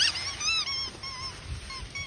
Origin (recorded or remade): recorded